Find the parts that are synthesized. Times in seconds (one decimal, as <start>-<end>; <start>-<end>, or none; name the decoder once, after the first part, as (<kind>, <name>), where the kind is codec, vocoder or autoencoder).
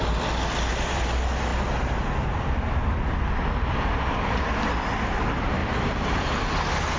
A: 5.6-6.5 (vocoder, BigVGAN v2)